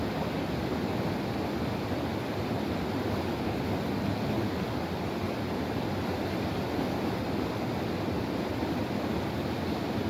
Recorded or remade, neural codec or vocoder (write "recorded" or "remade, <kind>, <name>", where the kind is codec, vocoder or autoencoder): recorded